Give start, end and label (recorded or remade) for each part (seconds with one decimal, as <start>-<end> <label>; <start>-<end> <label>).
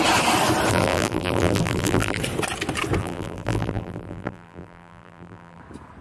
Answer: 0.0-0.7 recorded; 0.7-2.2 remade; 2.2-3.0 recorded; 3.0-5.6 remade; 5.6-6.0 recorded